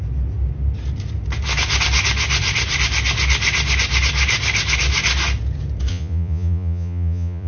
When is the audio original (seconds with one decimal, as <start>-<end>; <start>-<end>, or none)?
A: 0.0-5.9